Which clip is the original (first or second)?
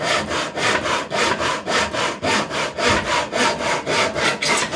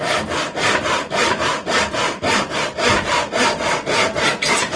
first